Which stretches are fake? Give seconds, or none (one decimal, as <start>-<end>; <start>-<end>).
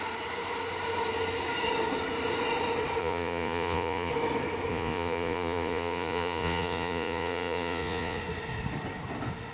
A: 3.0-4.1; 4.7-8.2